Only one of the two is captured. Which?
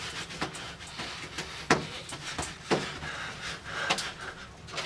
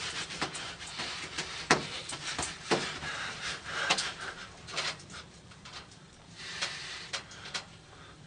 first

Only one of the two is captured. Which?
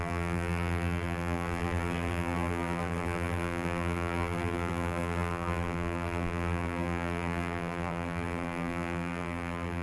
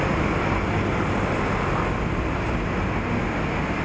second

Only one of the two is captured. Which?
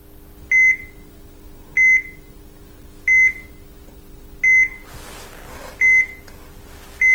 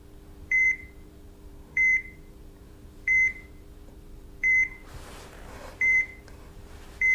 first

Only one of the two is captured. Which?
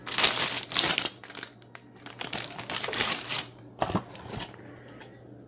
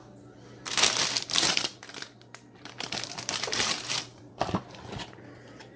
first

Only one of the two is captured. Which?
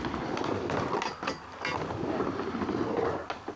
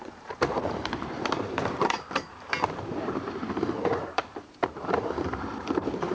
first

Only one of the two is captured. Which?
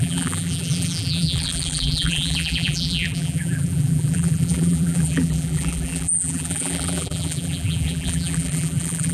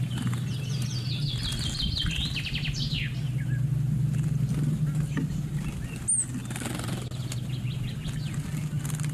second